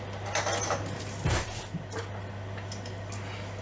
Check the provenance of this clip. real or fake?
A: real